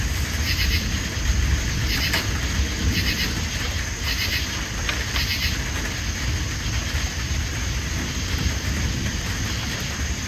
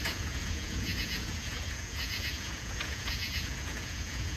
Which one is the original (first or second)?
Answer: first